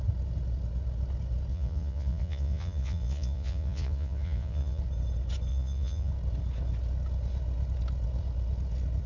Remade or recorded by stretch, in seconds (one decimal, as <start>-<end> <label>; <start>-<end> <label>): 0.0-1.5 recorded; 1.5-4.8 remade; 4.8-5.5 recorded; 5.5-6.1 remade; 6.1-9.1 recorded